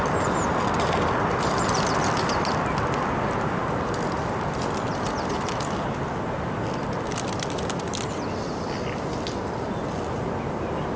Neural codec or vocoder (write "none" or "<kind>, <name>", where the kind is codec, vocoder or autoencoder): none